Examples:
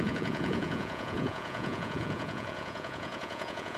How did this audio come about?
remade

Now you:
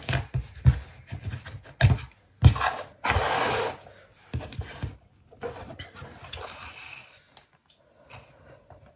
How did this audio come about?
recorded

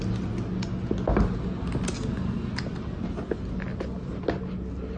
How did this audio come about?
recorded